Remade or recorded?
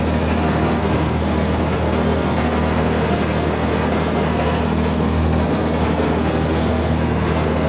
remade